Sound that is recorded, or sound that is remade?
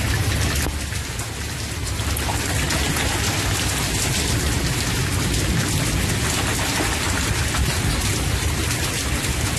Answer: recorded